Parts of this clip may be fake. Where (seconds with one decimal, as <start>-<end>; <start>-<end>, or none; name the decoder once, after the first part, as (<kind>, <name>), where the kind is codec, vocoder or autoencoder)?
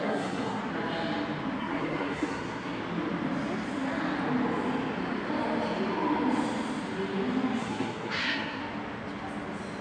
0.0-0.6 (codec, SNAC); 1.6-2.8; 7.6-8.6